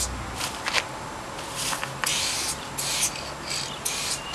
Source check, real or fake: real